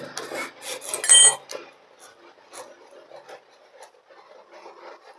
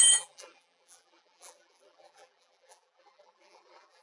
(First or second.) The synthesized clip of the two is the second